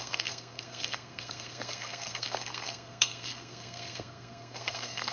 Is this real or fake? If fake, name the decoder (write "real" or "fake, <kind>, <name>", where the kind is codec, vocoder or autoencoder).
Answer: fake, codec, SNAC